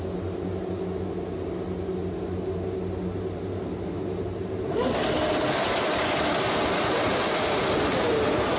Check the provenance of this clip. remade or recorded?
recorded